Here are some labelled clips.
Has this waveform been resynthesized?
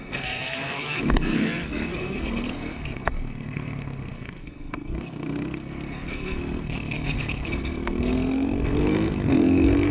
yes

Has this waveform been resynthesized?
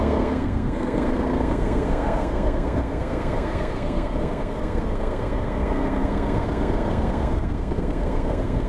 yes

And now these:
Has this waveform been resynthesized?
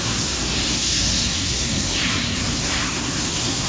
yes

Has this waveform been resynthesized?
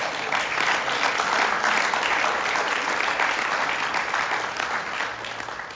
no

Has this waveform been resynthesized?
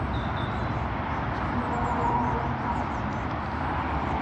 no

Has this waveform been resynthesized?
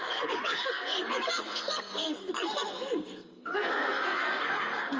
yes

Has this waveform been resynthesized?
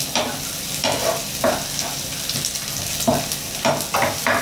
no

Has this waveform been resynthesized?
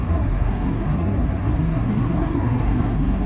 yes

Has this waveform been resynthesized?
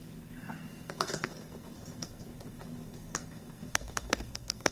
yes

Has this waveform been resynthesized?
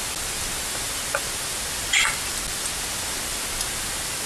no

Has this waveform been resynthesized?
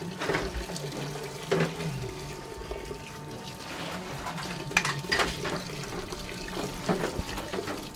no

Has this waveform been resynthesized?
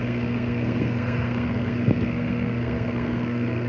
yes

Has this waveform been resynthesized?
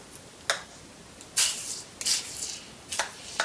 no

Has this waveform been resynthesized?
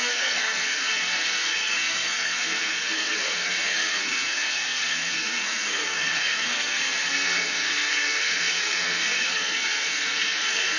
yes